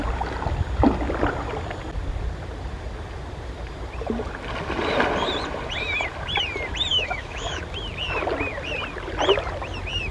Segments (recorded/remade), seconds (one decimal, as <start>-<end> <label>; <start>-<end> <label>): 0.0-6.9 recorded; 6.9-7.6 remade; 7.6-10.1 recorded